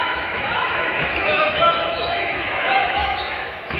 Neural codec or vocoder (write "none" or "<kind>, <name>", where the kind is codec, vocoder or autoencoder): autoencoder, DAC-VAE